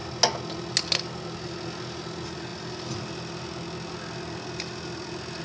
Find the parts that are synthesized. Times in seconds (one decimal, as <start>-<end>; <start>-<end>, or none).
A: none